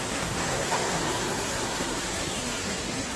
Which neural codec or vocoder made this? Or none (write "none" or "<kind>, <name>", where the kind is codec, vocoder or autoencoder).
codec, SNAC